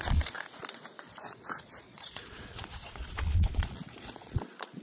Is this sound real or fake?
fake